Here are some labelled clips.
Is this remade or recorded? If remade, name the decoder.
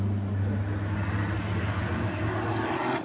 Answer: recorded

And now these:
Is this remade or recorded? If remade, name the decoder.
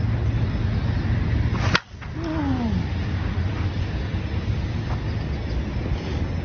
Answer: recorded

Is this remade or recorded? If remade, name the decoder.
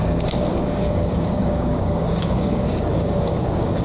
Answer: remade, codec, DAC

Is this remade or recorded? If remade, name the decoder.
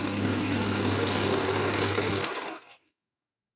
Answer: remade, codec, DAC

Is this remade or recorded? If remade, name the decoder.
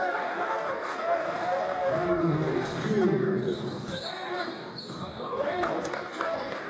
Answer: remade, codec, DAC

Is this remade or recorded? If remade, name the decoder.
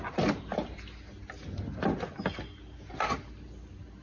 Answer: recorded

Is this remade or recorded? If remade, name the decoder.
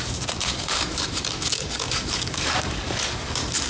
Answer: remade, codec, DAC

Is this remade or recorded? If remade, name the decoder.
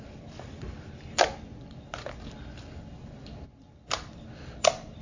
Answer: recorded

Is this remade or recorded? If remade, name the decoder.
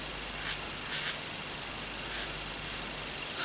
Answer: recorded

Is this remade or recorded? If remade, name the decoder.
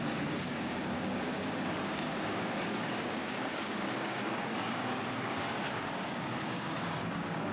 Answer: remade, codec, DAC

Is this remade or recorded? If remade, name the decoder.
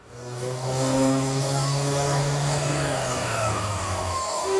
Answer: remade, codec, DAC